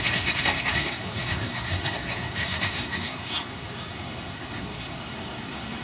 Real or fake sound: fake